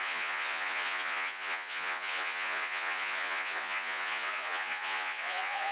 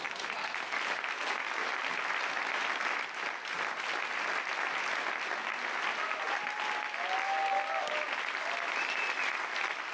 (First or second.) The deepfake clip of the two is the first